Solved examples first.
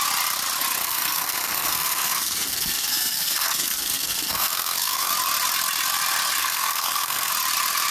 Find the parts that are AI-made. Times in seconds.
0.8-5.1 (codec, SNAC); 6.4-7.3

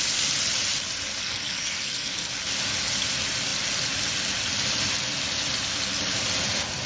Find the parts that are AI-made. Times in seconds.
1.2-2.3 (codec, SNAC)

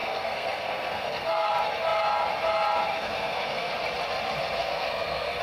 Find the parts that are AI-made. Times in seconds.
0.0-1.5 (codec, SNAC); 2.9-3.7; 4.6-5.4